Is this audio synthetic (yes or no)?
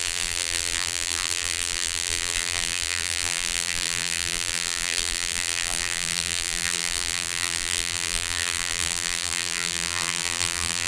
yes